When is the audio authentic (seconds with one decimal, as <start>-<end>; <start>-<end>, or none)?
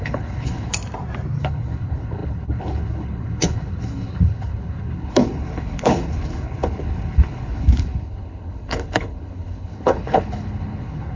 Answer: 0.7-1.4